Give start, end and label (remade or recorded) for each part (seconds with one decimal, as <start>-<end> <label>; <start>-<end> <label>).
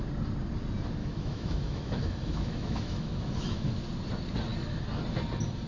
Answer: 0.0-1.0 recorded; 1.0-3.8 remade; 3.8-5.7 recorded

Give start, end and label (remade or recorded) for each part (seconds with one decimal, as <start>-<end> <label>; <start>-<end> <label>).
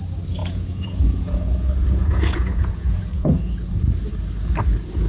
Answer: 0.0-0.4 recorded; 0.4-3.5 remade; 3.5-5.1 recorded